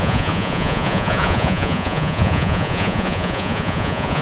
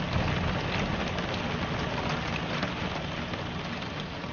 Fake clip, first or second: first